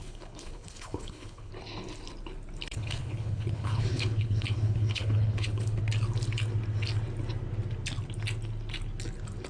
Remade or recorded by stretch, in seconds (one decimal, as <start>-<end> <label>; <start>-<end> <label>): 0.0-1.5 remade; 1.5-2.7 recorded; 2.7-5.8 remade; 5.8-9.5 recorded